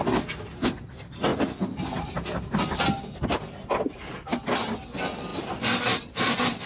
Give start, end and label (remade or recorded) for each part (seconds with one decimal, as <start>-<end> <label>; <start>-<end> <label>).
0.0-6.7 recorded